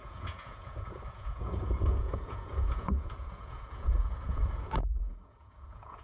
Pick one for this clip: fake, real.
fake